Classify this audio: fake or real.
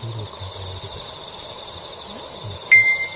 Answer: real